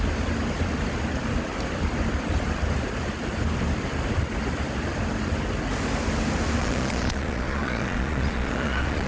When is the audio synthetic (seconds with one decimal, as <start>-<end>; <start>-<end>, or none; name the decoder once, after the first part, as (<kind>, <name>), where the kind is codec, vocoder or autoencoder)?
6.6-9.1 (vocoder, Vocos)